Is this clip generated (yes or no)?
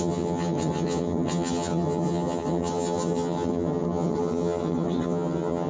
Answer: yes